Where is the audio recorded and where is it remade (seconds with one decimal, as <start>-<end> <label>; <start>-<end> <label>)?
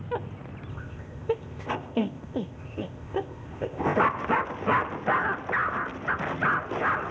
0.0-0.7 recorded; 0.7-4.0 remade; 4.0-7.1 recorded